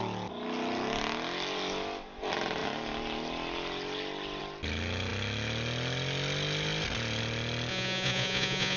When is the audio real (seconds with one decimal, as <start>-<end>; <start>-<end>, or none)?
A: 0.0-7.7